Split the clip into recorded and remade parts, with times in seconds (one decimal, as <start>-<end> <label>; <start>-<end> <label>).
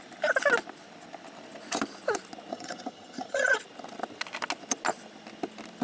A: 0.0-2.5 recorded; 2.5-3.6 remade; 3.6-5.8 recorded